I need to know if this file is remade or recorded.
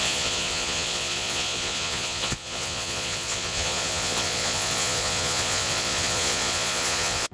remade